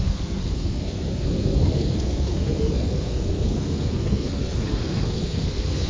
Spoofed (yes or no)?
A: yes